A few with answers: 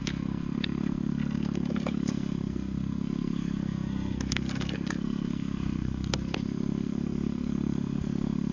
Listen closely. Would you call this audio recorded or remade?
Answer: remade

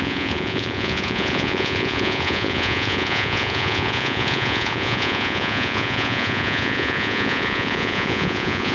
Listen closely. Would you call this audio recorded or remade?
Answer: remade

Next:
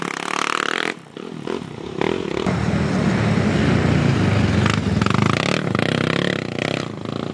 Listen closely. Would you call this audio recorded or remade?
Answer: recorded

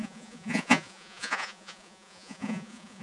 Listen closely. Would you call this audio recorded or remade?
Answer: remade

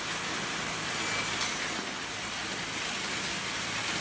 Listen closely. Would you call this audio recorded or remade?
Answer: recorded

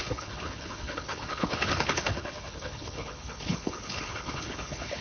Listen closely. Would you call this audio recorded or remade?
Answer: remade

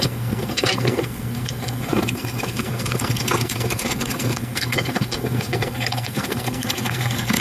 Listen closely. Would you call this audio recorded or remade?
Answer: remade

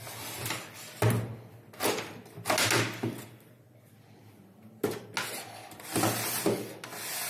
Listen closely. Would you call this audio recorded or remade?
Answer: recorded